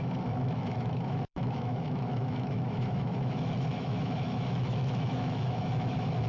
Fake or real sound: fake